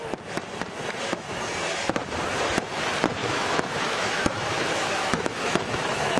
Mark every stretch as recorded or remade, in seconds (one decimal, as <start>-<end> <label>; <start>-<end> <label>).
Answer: 0.0-3.2 recorded; 3.2-6.2 remade